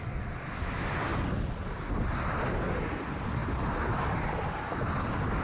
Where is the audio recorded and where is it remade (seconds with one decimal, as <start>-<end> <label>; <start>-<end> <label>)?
0.0-5.4 recorded